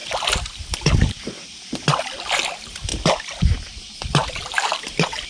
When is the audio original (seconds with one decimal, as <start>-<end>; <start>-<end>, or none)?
0.0-4.2; 4.8-5.3